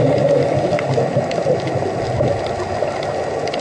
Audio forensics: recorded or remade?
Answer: recorded